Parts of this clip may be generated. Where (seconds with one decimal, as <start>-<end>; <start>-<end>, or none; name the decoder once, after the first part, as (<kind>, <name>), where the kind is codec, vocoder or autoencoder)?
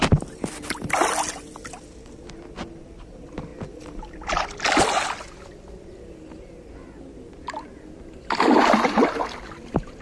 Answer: none